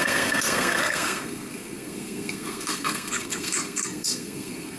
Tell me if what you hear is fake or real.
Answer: fake